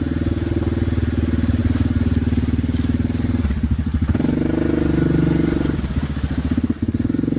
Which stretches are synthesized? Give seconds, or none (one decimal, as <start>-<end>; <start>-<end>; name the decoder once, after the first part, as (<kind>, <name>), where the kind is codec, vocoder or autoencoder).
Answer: none